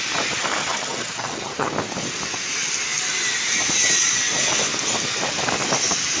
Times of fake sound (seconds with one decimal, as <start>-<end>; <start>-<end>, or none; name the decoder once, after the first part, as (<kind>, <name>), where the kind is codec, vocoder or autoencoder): 0.6-1.7 (vocoder, HiFi-GAN)